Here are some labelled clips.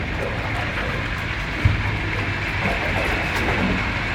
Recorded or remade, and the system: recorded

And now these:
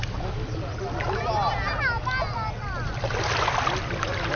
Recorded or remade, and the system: recorded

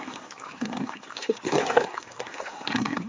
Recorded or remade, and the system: remade, codec, SNAC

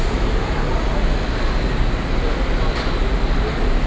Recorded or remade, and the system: recorded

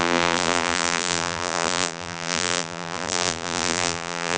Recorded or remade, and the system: remade, vocoder, BigVGAN v2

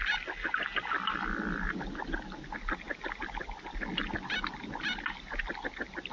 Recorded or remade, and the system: recorded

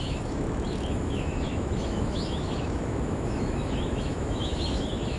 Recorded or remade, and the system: remade, autoencoder, DAC-VAE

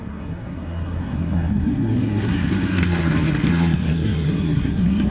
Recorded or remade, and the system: remade, codec, SNAC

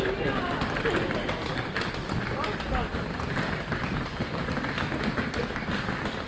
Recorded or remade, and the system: recorded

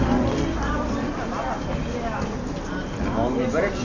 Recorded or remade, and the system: recorded